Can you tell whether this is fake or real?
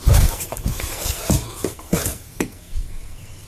fake